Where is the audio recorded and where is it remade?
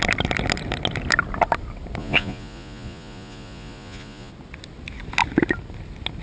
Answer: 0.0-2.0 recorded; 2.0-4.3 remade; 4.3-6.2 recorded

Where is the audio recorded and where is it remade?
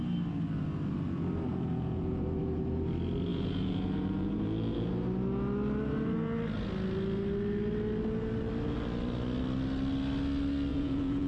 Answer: 0.0-1.5 recorded; 1.5-2.2 remade; 2.2-3.3 recorded; 3.3-4.9 remade; 4.9-10.7 recorded; 10.7-11.3 remade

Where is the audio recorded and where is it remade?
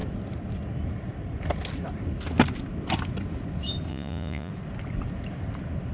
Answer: 0.0-3.9 recorded; 3.9-4.5 remade; 4.5-5.9 recorded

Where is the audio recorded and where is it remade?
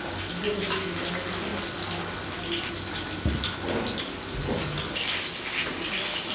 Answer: 0.0-6.3 recorded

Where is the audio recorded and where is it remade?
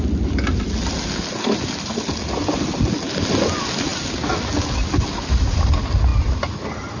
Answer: 0.0-7.0 recorded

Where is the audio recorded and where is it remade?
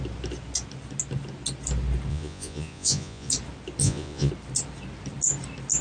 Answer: 0.0-2.1 recorded; 2.1-3.3 remade; 3.3-3.8 recorded; 3.8-4.3 remade; 4.3-5.8 recorded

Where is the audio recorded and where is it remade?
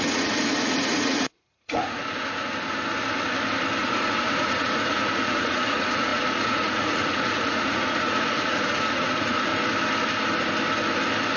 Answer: 0.0-2.0 remade; 2.0-3.8 recorded; 3.8-9.5 remade; 9.5-11.4 recorded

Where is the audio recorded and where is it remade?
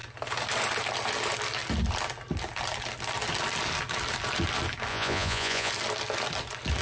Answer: 0.0-4.9 recorded; 4.9-5.7 remade; 5.7-6.8 recorded